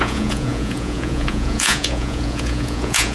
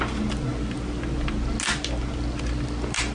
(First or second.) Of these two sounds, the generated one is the first